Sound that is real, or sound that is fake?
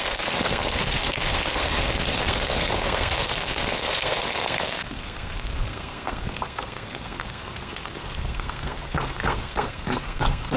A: fake